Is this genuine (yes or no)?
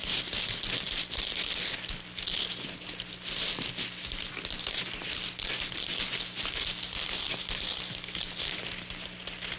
yes